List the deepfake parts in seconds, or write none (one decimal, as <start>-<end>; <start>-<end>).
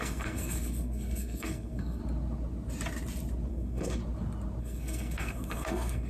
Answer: 0.0-2.0; 3.5-4.0; 4.6-6.1